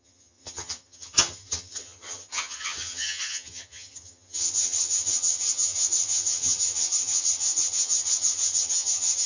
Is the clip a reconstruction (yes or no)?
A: yes